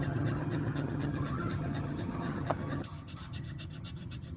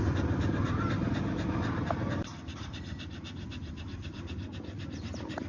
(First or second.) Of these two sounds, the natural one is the second